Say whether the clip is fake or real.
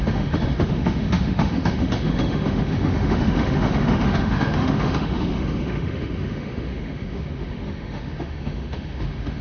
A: fake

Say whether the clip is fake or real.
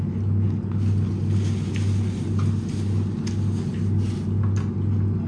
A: real